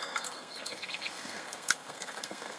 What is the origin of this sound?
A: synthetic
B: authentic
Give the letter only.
A